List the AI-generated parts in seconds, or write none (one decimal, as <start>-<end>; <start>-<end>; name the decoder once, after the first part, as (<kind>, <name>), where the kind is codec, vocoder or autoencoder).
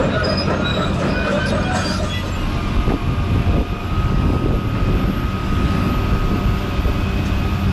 0.7-1.4 (codec, DAC); 3.8-4.5; 5.4-5.9